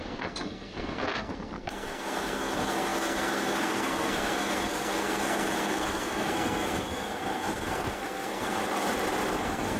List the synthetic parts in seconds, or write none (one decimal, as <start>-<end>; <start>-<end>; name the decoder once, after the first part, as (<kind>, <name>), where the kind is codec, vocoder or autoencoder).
0.0-8.6 (codec, SNAC); 9.3-9.8